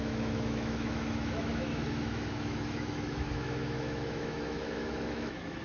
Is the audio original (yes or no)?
no